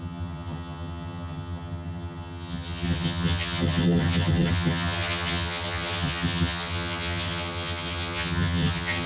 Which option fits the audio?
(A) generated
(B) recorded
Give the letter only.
A